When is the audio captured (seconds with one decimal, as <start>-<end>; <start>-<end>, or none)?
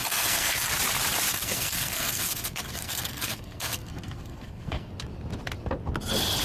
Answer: 0.7-1.3; 4.9-6.4